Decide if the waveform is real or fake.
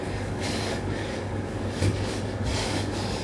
fake